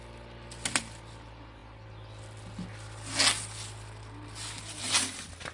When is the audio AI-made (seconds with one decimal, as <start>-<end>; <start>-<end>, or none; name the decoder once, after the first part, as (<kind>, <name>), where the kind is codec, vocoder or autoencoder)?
none